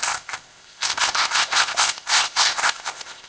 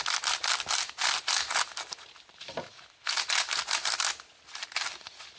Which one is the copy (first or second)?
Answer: first